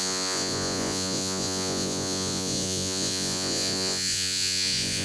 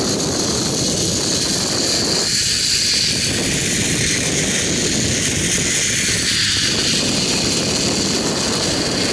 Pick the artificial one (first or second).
first